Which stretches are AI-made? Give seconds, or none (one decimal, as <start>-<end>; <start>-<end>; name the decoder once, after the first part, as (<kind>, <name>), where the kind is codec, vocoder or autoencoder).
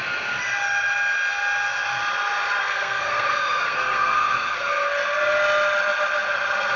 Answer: 2.6-4.7 (codec, SNAC)